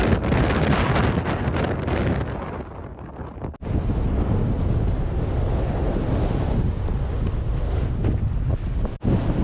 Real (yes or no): yes